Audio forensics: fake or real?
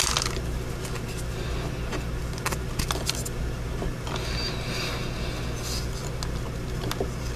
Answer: real